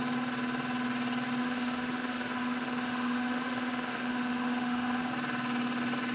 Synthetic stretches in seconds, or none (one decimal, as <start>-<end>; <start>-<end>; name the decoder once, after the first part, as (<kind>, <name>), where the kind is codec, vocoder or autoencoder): 1.4-5.1 (autoencoder, DAC-VAE)